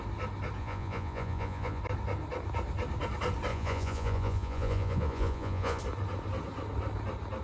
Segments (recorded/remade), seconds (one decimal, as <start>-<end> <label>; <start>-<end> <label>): 0.0-0.6 recorded; 0.6-1.8 remade; 1.8-3.5 recorded; 3.5-5.8 remade; 5.8-7.4 recorded